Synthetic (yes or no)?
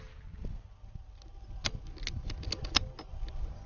no